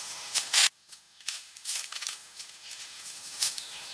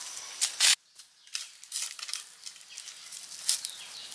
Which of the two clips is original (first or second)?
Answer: second